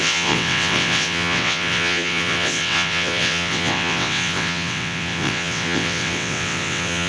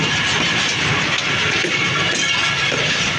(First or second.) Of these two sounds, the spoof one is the first